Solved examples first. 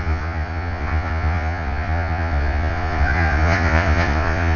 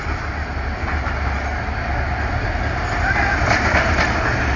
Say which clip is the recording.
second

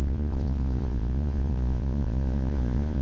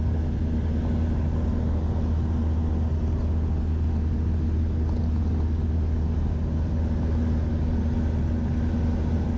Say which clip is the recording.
second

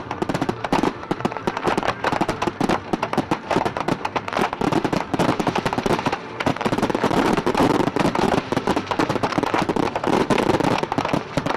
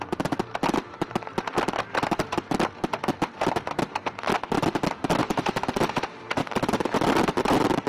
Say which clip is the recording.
second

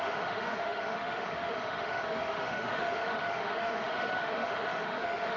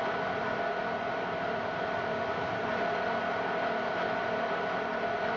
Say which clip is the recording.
second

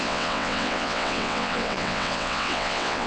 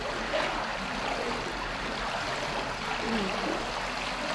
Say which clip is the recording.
second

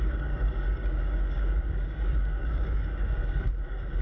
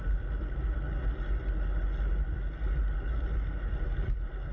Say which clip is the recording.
second